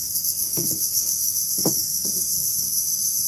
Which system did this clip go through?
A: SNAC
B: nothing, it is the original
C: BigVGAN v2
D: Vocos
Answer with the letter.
A